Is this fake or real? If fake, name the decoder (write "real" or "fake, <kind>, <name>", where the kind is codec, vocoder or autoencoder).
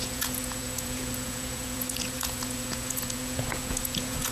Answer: fake, vocoder, Vocos